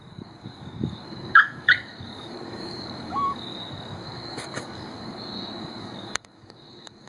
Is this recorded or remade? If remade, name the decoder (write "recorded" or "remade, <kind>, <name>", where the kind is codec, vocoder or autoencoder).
remade, codec, DAC